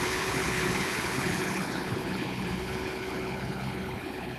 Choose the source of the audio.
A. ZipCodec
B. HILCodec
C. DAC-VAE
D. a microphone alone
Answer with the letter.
B